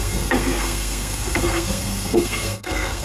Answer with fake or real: fake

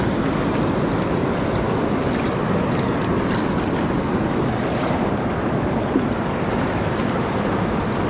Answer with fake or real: real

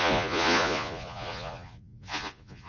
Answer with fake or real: fake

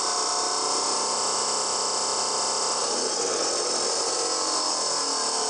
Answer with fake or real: real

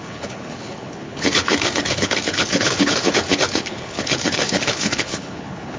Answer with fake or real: fake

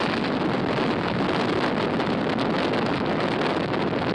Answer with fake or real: real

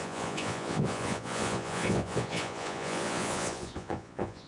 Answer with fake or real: fake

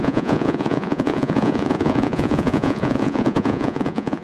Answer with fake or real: fake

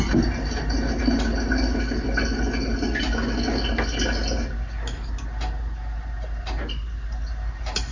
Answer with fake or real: real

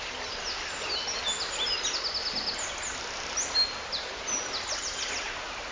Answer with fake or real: real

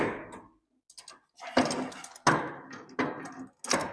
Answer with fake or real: real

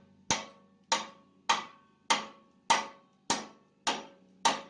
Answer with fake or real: real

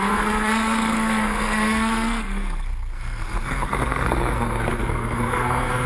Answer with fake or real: fake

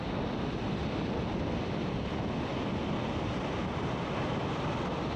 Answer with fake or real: real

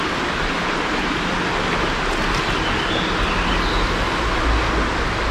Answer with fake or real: real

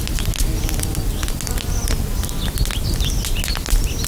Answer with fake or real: real